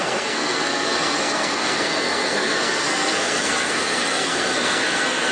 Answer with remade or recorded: remade